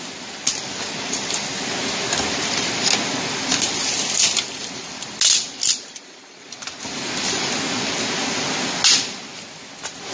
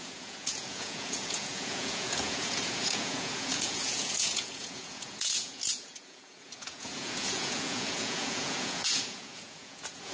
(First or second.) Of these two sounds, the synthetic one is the second